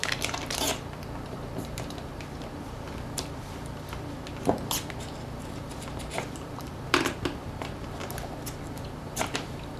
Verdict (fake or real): fake